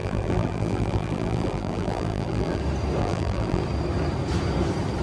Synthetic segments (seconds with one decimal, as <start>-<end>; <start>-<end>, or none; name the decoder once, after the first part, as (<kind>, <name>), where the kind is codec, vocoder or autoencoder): 0.0-2.6 (vocoder, BigVGAN v2); 3.0-3.6